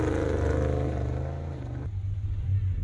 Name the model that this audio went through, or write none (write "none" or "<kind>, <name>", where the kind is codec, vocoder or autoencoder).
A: none